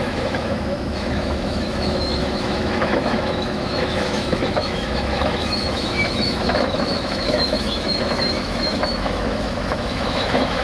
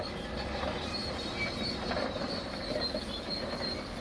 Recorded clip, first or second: second